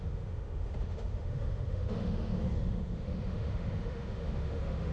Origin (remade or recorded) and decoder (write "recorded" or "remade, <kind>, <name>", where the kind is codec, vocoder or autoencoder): remade, autoencoder, DAC-VAE